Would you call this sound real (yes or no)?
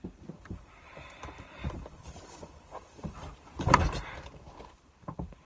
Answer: no